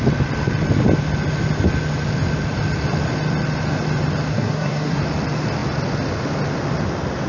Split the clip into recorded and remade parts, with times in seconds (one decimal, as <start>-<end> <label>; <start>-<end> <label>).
0.0-4.3 recorded; 4.3-5.0 remade; 5.0-7.3 recorded